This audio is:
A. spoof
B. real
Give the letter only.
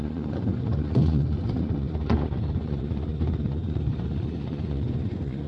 A